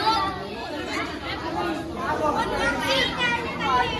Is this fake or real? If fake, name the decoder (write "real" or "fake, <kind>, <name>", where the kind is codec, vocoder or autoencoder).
real